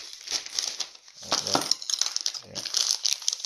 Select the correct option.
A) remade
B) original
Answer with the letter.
B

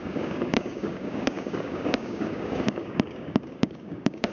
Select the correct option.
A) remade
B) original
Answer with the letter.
A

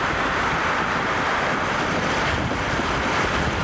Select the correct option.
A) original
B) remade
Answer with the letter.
A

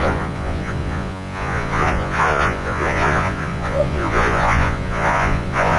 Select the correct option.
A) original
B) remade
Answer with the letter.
B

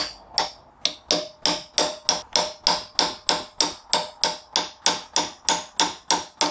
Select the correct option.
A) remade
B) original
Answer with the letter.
B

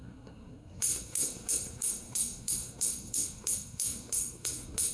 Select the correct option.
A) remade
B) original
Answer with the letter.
A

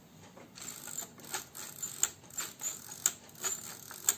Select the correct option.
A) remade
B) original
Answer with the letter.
B